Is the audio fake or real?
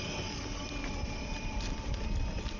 real